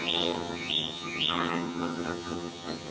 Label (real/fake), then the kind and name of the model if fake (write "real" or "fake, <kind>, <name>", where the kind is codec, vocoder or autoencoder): fake, vocoder, HiFi-GAN